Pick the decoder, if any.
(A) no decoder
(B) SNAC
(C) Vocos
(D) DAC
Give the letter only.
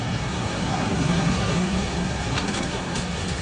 B